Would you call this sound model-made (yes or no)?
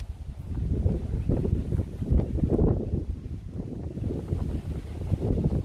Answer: no